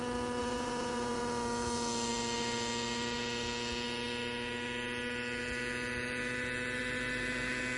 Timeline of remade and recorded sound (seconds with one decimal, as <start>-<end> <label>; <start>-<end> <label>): 0.0-0.4 recorded; 0.4-1.2 remade; 1.2-7.8 recorded